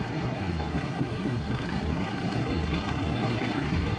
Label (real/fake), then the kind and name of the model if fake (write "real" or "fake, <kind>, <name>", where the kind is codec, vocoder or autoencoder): fake, codec, SNAC